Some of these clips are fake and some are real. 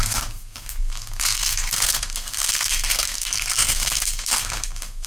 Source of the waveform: fake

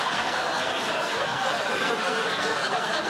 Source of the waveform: fake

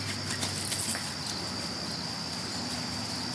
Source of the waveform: real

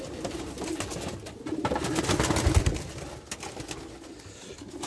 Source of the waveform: real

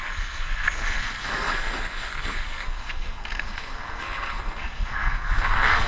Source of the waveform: fake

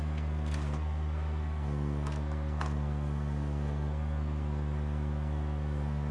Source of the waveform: fake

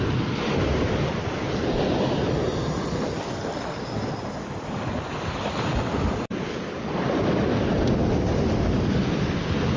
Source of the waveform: real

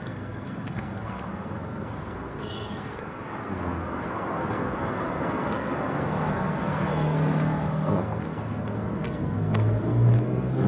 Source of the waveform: fake